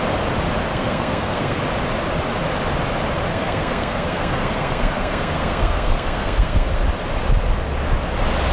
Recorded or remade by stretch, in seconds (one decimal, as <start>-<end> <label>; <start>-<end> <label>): 0.0-0.7 recorded; 0.7-1.6 remade; 1.6-3.3 recorded; 3.3-6.8 remade; 6.8-8.5 recorded